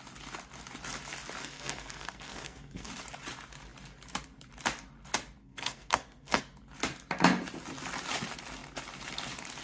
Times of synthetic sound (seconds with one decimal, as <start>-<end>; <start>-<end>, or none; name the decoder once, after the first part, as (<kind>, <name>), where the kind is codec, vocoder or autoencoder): 1.4-2.9 (codec, SNAC); 5.4-6.4